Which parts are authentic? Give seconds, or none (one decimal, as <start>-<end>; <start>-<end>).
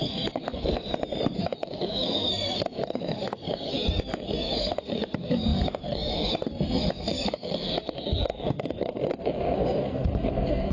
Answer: 0.9-1.4